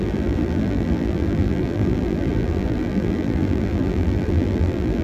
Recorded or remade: remade